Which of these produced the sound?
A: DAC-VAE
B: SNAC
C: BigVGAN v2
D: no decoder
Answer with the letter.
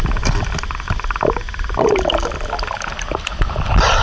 C